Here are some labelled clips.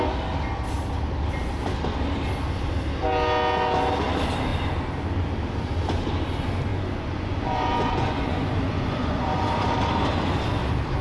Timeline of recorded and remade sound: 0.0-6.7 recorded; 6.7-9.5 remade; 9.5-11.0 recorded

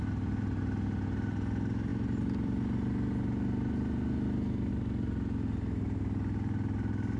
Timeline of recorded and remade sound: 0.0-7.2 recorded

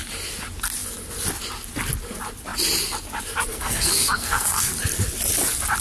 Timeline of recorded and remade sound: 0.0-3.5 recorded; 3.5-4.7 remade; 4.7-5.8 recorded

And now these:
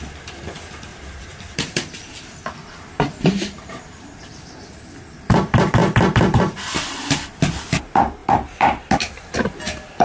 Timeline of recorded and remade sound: 0.0-0.9 recorded; 0.9-4.2 remade; 4.2-8.2 recorded; 8.2-8.9 remade; 8.9-10.0 recorded